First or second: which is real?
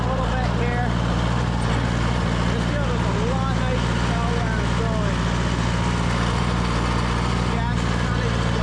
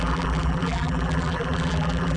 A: first